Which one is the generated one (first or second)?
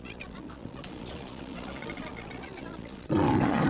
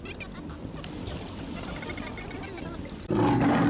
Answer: first